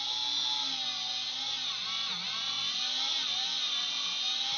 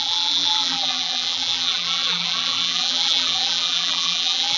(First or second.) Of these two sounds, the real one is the first